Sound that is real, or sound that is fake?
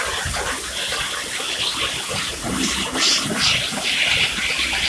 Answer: real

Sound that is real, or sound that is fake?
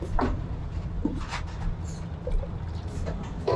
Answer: fake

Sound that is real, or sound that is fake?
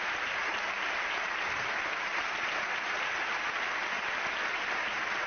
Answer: real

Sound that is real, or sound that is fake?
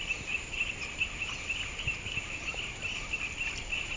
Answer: real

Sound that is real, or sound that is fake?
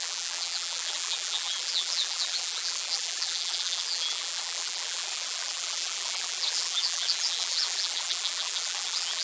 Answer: fake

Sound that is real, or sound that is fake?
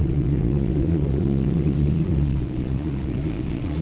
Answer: fake